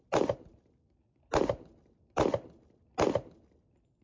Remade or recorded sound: recorded